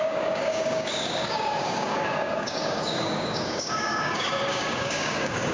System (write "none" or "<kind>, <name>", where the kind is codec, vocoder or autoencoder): codec, DAC